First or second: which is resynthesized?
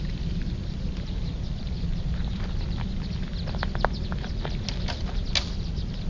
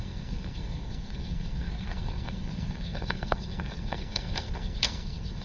second